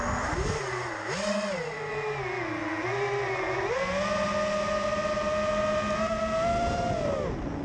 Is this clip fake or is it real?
real